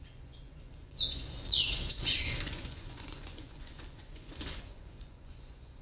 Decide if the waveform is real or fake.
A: fake